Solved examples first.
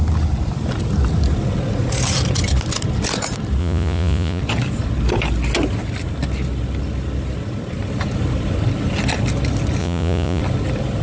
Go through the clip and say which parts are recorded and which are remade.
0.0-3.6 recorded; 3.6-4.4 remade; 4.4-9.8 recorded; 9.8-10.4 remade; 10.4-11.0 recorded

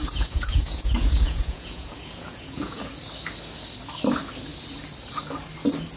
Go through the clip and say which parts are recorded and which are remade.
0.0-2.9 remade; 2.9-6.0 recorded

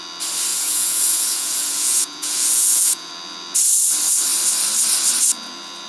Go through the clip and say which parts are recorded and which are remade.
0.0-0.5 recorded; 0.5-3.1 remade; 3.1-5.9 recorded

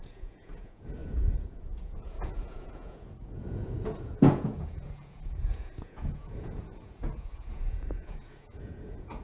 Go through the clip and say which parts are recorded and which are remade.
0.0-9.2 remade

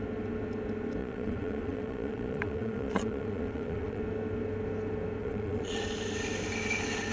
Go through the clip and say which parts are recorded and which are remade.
0.0-1.0 recorded; 1.0-4.0 remade; 4.0-5.2 recorded; 5.2-5.8 remade; 5.8-7.1 recorded

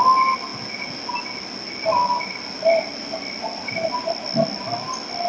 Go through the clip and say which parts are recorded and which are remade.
0.0-5.3 recorded